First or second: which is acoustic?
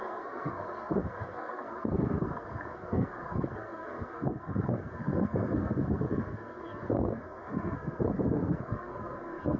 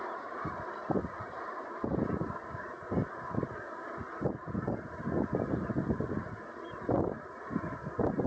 second